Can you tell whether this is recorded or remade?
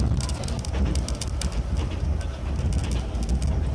recorded